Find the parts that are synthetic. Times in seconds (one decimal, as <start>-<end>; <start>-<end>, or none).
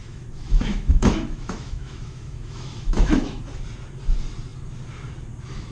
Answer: 0.0-3.4